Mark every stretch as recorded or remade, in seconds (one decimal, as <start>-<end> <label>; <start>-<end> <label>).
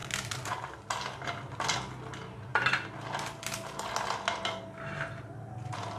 0.0-6.0 recorded